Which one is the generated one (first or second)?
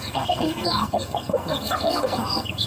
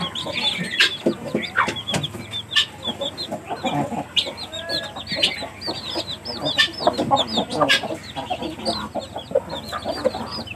first